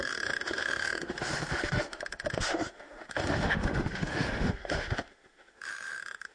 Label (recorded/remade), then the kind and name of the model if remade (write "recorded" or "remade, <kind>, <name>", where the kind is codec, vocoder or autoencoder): remade, autoencoder, DAC-VAE